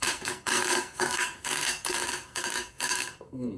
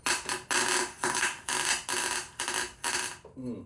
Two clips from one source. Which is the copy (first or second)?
first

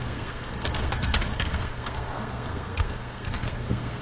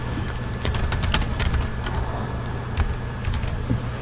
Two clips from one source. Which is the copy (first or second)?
first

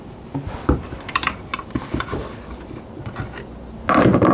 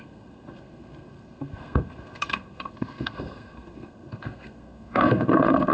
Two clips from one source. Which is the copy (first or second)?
second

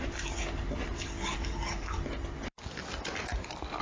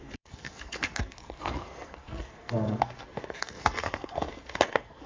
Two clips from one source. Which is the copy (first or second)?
second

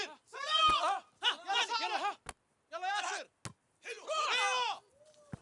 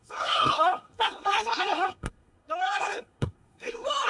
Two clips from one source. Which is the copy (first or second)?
second